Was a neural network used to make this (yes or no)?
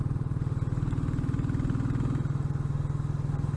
no